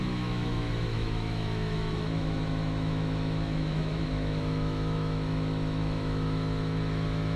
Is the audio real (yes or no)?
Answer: no